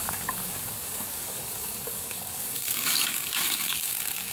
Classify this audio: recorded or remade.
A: remade